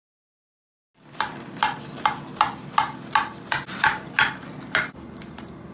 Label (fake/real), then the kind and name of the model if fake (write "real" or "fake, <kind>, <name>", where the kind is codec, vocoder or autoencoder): real